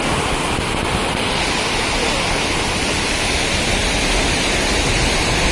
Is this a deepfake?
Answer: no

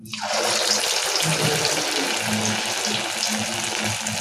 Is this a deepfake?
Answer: no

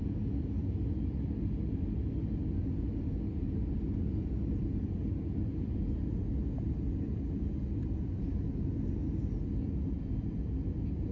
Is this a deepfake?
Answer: no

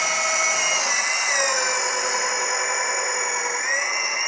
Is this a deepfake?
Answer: no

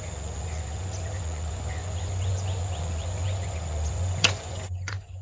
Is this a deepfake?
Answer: yes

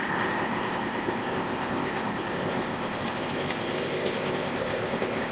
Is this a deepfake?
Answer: yes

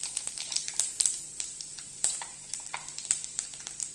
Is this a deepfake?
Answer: yes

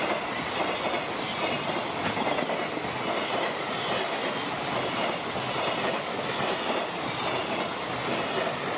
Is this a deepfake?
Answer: no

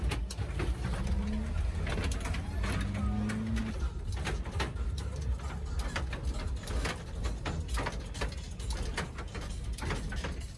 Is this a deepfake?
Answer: no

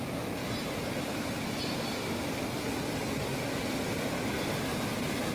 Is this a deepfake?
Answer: no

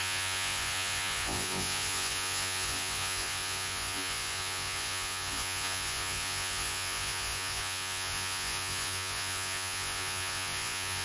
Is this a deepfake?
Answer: yes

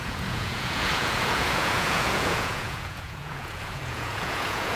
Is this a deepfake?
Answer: yes